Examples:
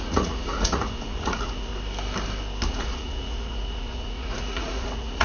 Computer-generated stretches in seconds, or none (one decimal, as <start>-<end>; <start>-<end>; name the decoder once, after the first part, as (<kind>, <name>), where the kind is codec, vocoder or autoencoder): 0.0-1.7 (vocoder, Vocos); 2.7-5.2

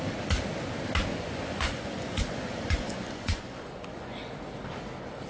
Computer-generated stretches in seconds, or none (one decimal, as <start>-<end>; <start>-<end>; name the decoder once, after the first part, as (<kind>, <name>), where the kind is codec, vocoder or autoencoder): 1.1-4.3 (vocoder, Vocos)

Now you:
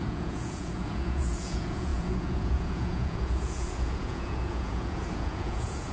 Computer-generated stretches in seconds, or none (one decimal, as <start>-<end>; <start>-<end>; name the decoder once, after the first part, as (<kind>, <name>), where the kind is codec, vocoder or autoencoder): 0.0-5.9 (vocoder, Vocos)

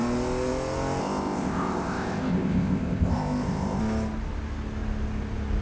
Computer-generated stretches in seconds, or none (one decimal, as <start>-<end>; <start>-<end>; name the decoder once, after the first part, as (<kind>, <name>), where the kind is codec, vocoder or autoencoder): 1.0-3.8 (codec, ZipCodec)

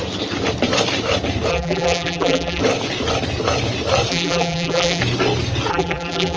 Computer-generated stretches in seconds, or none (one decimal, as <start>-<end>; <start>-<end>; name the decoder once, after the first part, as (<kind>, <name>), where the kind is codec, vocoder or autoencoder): 1.5-2.6 (vocoder, BigVGAN v2); 4.1-5.0; 5.7-6.4

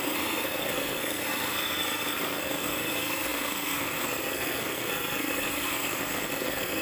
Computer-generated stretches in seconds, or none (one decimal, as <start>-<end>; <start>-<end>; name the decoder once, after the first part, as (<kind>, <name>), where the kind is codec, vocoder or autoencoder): 0.0-6.8 (codec, SNAC)